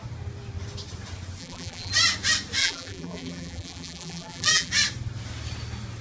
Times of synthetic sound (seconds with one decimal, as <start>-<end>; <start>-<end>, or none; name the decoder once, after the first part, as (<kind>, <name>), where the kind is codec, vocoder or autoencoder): 1.4-1.9 (vocoder, BigVGAN v2); 2.6-4.7